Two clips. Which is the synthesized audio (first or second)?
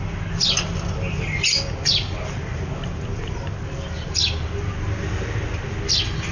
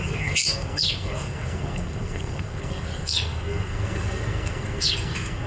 second